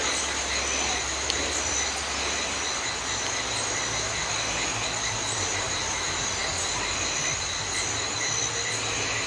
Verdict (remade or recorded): recorded